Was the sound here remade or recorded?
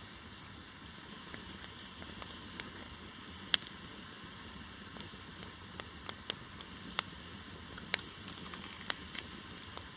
recorded